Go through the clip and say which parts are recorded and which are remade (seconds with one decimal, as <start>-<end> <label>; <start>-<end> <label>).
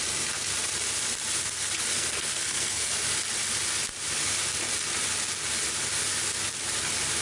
0.0-1.9 recorded; 1.9-2.9 remade; 2.9-7.2 recorded